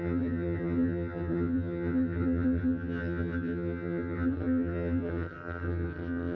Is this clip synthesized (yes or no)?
yes